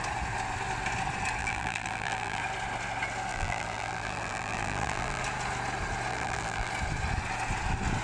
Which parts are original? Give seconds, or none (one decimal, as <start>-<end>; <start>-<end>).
0.0-1.4; 2.4-3.3; 5.2-6.1; 6.7-8.0